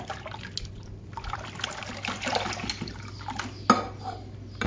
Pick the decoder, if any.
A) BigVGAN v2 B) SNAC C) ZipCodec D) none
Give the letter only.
D